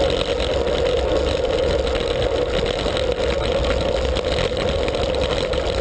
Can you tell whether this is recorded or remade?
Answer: recorded